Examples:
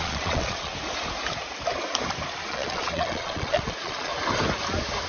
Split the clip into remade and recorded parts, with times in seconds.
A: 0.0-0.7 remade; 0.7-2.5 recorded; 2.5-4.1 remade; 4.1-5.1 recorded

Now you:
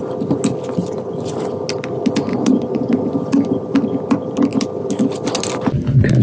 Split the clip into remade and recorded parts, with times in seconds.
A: 0.0-2.3 recorded; 2.3-3.1 remade; 3.1-6.2 recorded

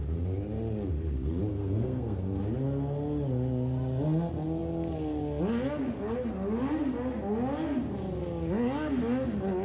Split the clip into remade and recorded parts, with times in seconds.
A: 0.0-1.5 recorded; 1.5-2.4 remade; 2.4-9.6 recorded

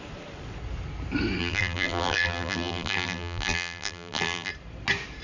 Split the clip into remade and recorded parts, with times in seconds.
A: 0.0-1.4 recorded; 1.4-4.5 remade; 4.5-5.2 recorded

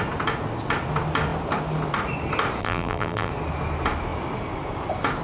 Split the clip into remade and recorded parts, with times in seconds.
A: 0.0-2.6 recorded; 2.6-3.3 remade; 3.3-5.2 recorded

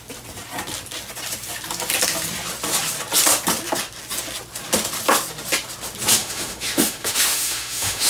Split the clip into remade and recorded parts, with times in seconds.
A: 0.0-6.2 recorded; 6.2-8.1 remade